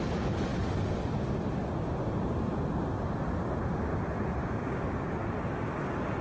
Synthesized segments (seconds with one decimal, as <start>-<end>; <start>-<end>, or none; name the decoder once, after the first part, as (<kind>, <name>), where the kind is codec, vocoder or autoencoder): 4.4-4.9 (codec, DAC)